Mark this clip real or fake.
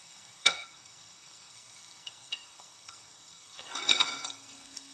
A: fake